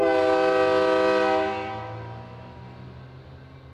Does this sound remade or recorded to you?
recorded